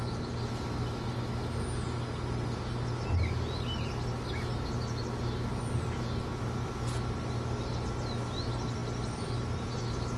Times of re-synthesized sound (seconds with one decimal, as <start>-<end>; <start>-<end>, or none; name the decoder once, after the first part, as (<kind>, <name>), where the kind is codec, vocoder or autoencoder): none